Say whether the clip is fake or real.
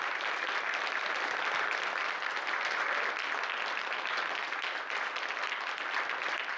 fake